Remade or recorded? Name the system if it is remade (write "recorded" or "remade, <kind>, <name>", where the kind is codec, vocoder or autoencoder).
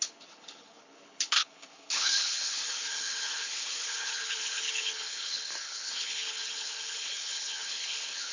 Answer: remade, codec, HILCodec